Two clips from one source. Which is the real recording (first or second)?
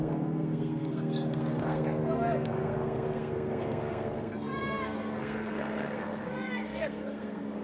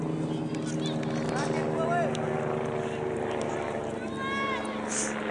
second